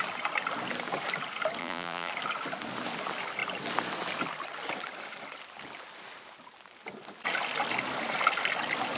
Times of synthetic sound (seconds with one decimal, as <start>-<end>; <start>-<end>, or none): 1.6-2.1